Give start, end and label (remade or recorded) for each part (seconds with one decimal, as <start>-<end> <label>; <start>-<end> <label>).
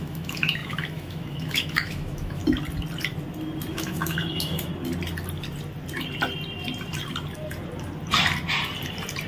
0.0-2.4 remade; 2.4-3.7 recorded; 3.7-4.7 remade; 4.7-9.3 recorded